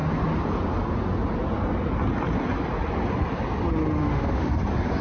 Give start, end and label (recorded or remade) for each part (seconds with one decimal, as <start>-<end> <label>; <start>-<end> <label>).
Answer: 0.0-4.0 recorded; 4.0-4.5 remade; 4.5-5.0 recorded